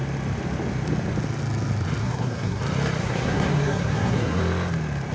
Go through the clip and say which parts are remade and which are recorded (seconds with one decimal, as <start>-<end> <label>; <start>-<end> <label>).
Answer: 0.0-2.0 recorded; 2.0-2.6 remade; 2.6-3.0 recorded; 3.0-4.4 remade; 4.4-5.1 recorded